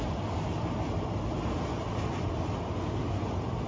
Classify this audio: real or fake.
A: real